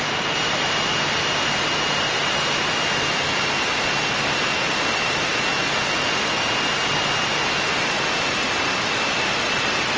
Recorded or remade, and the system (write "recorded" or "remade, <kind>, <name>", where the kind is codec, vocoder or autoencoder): recorded